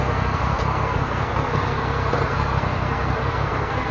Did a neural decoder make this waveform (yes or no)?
yes